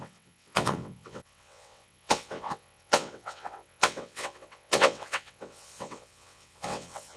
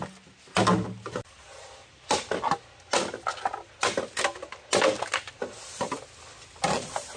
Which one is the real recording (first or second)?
second